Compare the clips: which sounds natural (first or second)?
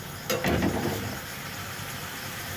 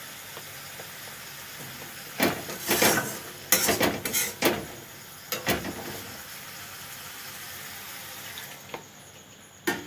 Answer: second